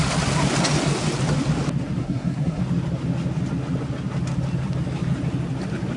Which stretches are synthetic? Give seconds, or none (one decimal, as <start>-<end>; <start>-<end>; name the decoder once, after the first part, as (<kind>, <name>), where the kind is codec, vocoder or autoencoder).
2.0-2.6 (codec, SNAC)